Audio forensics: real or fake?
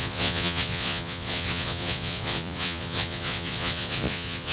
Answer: fake